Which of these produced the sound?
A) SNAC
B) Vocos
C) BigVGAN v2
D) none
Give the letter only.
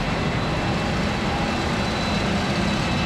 D